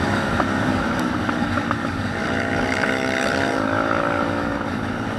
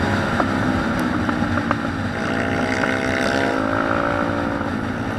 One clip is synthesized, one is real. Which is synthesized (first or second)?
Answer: first